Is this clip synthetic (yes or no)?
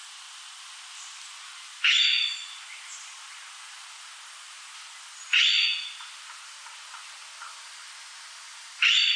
no